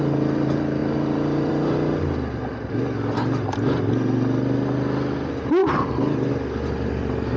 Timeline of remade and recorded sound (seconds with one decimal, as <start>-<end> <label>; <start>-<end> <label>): 0.0-0.8 recorded; 0.8-1.5 remade; 1.5-5.6 recorded; 5.6-6.3 remade; 6.3-7.4 recorded